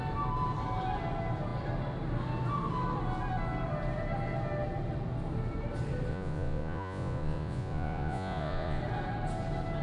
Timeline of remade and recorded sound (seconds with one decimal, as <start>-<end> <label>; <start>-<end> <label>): 0.0-6.1 recorded; 6.1-8.8 remade; 8.8-9.8 recorded